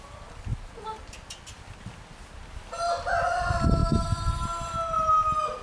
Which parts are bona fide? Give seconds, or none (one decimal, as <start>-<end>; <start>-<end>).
0.0-3.8; 4.3-5.6